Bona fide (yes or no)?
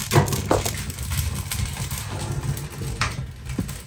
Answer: yes